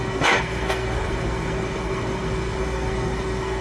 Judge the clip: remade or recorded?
remade